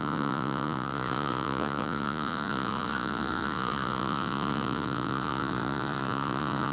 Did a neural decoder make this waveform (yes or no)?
yes